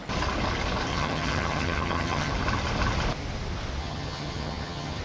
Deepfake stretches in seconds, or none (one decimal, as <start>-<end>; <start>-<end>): 0.9-2.3; 3.8-5.0